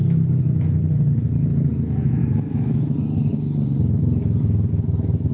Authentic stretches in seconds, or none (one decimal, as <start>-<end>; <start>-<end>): 0.9-2.2; 3.0-5.3